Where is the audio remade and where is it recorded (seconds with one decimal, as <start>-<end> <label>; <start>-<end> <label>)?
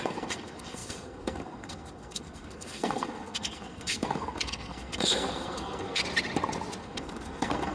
0.0-6.0 remade; 6.0-6.8 recorded; 6.8-7.7 remade